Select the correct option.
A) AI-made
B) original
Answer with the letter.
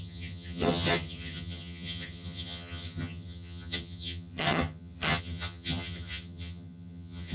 A